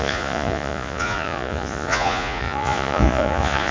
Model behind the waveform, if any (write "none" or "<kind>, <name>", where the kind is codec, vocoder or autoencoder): vocoder, Vocos